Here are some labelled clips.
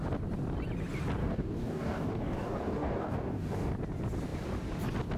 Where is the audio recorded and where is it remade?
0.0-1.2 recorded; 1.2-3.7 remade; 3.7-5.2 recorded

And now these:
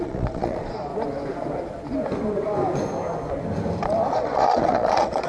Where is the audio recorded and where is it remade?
0.0-0.9 remade; 0.9-4.1 recorded; 4.1-5.3 remade

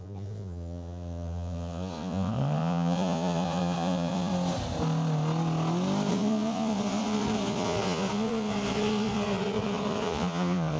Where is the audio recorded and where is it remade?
0.0-4.3 remade; 4.3-6.1 recorded; 6.1-10.8 remade

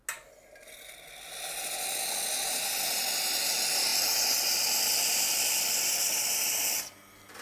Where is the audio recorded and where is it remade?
0.0-7.4 recorded

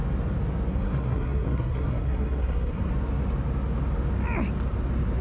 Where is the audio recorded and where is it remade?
0.0-0.7 recorded; 0.7-2.9 remade; 2.9-5.2 recorded